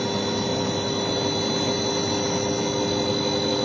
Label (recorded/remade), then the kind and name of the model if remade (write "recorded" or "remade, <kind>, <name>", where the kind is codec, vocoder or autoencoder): recorded